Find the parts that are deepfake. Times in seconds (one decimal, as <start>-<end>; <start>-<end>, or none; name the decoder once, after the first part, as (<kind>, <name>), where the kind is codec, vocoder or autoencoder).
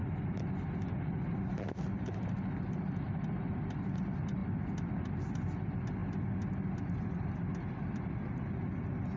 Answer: none